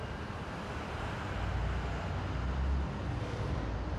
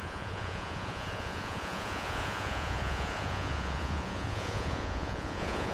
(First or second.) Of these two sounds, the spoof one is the second